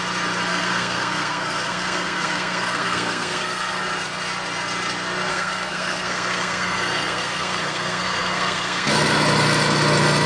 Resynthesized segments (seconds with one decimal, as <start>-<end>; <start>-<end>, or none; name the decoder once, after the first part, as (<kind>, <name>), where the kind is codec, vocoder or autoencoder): 0.5-3.8 (codec, SNAC); 5.3-8.9